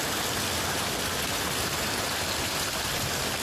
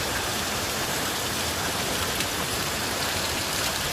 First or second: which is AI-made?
second